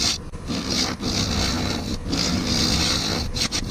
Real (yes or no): yes